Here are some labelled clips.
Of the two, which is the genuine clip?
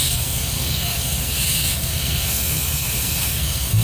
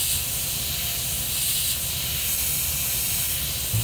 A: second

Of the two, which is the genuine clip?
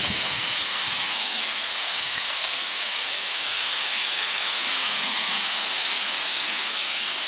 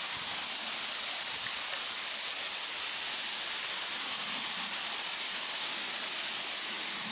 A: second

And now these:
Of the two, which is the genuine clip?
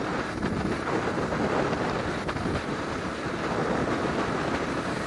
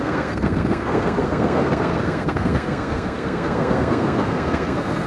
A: first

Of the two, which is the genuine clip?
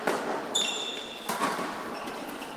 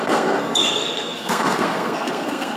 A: first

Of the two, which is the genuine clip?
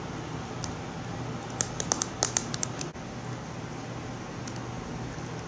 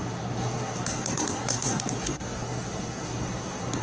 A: first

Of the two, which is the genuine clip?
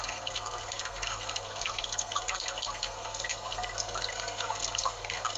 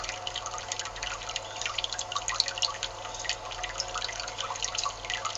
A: second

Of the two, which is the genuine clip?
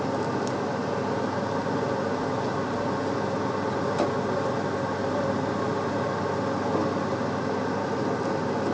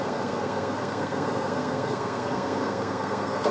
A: first